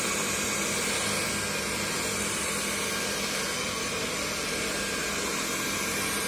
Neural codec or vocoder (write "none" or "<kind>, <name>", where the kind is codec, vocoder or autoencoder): none